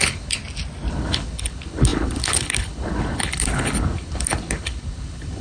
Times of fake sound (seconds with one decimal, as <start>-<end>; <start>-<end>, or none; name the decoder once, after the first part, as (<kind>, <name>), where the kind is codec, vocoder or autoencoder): 0.0-0.4 (codec, HILCodec); 0.9-5.4